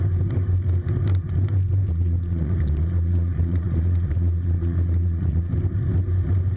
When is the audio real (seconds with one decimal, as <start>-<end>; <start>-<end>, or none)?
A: 0.0-1.9; 5.5-6.6